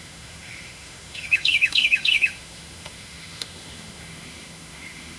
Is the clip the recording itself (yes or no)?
no